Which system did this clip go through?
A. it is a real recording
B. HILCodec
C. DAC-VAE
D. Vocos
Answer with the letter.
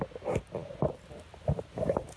A